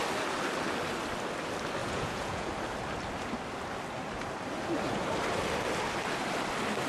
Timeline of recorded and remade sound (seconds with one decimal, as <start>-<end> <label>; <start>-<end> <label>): 0.0-1.8 recorded; 1.8-2.5 remade; 2.5-6.9 recorded